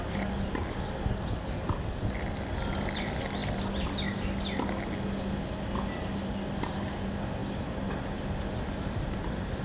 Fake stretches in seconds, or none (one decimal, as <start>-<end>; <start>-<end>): none